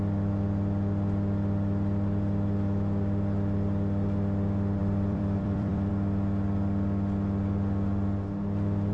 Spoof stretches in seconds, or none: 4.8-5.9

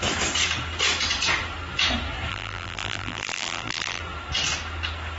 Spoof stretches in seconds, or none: 2.3-4.0